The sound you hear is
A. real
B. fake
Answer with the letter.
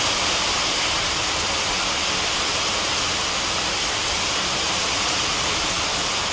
A